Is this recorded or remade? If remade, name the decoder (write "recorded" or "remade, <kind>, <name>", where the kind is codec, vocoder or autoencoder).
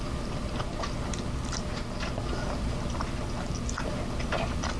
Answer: recorded